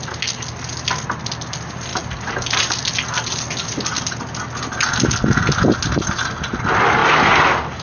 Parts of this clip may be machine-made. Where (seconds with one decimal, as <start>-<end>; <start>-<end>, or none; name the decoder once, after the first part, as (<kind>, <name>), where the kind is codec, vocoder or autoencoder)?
none